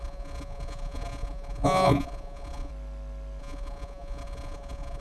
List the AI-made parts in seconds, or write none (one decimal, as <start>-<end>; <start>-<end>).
0.0-2.7; 3.4-5.0